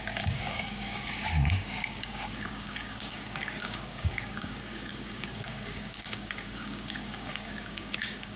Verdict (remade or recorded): remade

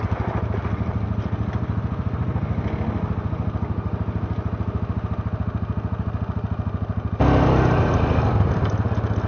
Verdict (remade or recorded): recorded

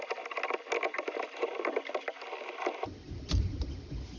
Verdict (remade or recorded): recorded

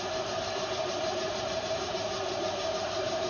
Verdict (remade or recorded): remade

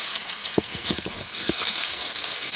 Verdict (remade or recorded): remade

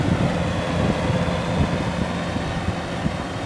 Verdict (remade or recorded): recorded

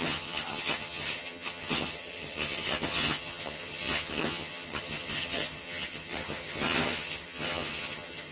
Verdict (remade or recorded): remade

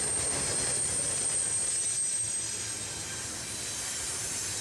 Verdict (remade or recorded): recorded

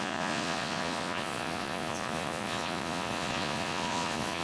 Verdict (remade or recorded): remade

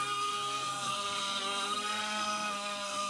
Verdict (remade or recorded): remade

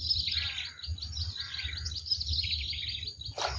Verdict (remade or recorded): recorded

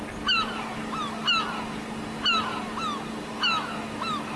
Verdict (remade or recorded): recorded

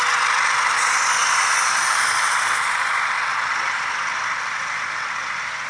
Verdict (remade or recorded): recorded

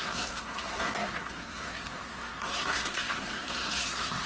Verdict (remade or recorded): remade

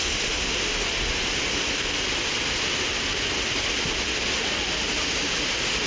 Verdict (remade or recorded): recorded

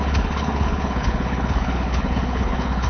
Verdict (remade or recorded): remade